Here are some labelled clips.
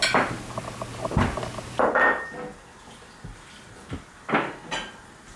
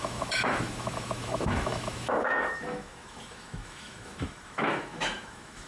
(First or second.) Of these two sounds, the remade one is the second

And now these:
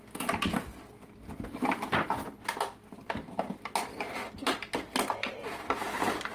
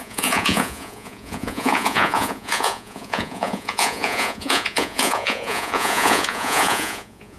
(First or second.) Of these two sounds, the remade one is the second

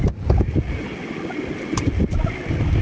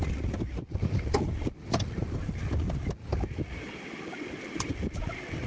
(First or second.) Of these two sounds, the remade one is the second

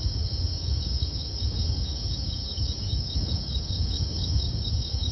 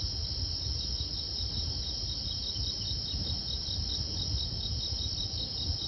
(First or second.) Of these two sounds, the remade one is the first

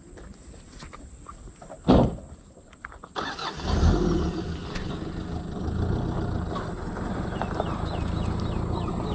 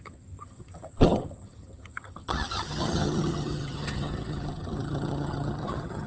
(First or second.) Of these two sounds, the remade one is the second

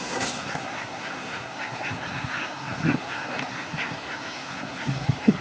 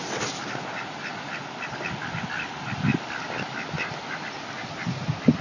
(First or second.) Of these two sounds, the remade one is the first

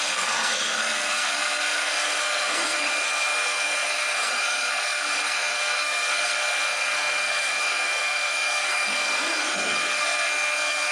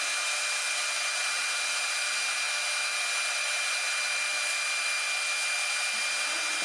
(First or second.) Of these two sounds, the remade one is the first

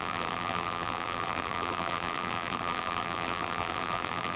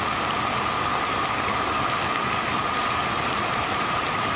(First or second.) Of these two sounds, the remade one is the first